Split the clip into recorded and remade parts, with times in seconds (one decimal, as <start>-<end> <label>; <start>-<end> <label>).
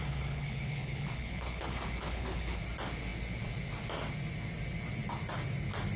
0.0-2.6 remade; 2.6-6.0 recorded